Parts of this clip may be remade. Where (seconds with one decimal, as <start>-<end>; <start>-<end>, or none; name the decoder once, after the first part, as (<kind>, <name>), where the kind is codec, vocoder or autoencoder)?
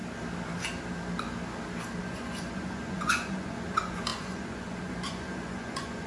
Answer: 2.0-6.1 (vocoder, Vocos)